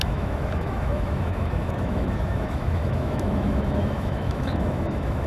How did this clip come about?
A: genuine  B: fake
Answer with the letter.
B